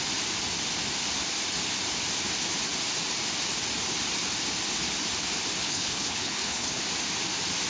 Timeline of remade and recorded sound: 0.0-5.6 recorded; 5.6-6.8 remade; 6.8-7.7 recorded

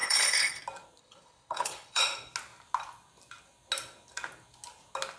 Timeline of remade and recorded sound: 0.0-0.6 remade; 0.6-1.0 recorded; 1.0-2.0 remade; 2.0-5.2 recorded

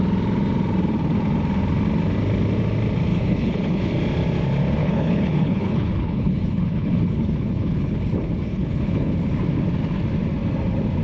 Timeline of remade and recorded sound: 0.0-3.1 recorded; 3.1-3.9 remade; 3.9-4.8 recorded; 4.8-8.0 remade; 8.0-8.5 recorded; 8.5-9.1 remade; 9.1-11.0 recorded

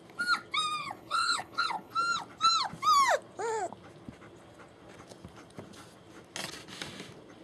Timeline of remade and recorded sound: 0.0-0.8 recorded; 0.8-1.9 remade; 1.9-7.4 recorded